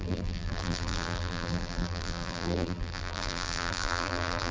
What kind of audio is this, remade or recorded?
remade